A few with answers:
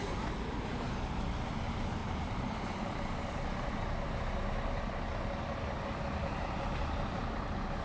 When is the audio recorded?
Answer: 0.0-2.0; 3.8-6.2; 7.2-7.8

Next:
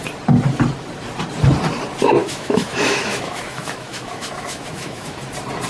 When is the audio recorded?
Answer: 0.0-2.2; 5.2-5.7

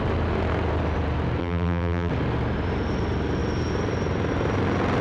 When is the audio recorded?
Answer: 0.0-1.4; 2.1-5.0